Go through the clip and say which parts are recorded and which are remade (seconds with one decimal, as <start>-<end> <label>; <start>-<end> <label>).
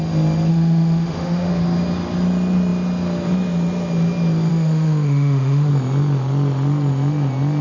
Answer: 0.0-0.5 recorded; 0.5-1.5 remade; 1.5-4.5 recorded; 4.5-5.7 remade; 5.7-7.6 recorded